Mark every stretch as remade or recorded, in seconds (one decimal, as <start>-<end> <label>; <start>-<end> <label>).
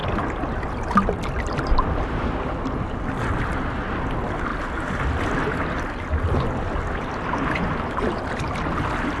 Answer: 0.0-9.2 recorded